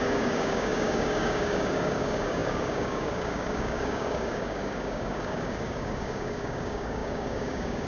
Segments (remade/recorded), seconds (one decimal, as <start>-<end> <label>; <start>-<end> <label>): 0.0-7.9 remade